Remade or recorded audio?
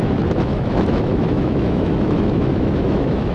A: remade